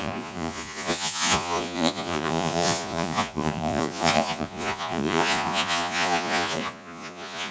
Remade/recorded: remade